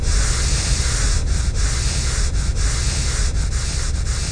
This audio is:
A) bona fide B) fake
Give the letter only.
A